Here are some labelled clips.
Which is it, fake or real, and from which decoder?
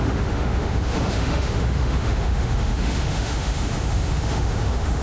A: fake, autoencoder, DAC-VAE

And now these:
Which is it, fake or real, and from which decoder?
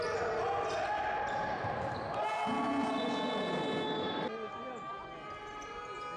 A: real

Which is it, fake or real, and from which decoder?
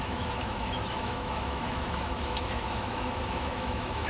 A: fake, autoencoder, DAC-VAE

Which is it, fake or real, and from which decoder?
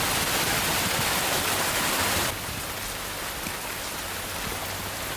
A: real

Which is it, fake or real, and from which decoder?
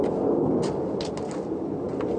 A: real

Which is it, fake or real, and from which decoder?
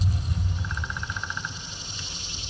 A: real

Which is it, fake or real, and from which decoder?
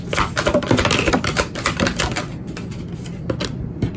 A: real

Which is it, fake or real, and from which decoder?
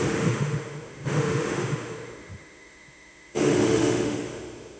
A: fake, autoencoder, DAC-VAE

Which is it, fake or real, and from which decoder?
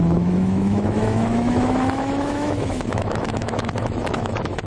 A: fake, autoencoder, DAC-VAE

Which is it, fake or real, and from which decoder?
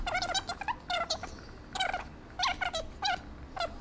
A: real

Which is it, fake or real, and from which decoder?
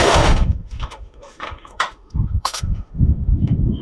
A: fake, autoencoder, DAC-VAE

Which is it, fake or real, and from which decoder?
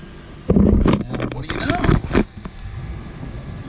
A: real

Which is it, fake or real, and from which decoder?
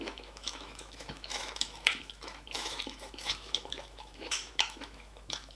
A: fake, autoencoder, DAC-VAE